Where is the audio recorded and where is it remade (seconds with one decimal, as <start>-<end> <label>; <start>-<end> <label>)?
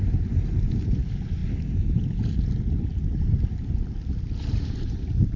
0.0-1.4 remade; 1.4-4.6 recorded; 4.6-5.4 remade